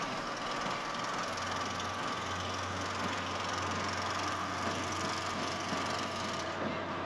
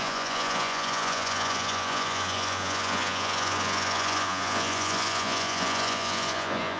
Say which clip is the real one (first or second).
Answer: first